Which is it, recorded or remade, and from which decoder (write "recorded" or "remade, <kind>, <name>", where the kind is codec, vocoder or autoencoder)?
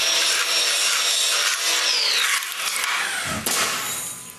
recorded